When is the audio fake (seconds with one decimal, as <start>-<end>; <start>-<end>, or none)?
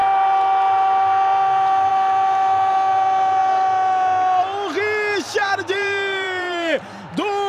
5.4-7.1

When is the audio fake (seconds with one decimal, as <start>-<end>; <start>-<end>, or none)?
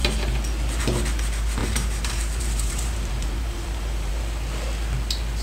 1.6-4.1